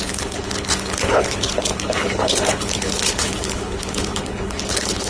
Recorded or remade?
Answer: remade